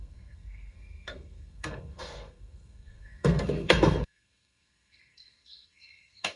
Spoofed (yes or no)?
yes